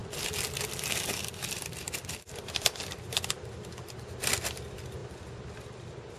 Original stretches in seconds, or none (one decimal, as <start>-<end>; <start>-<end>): 0.0-3.7; 5.0-6.2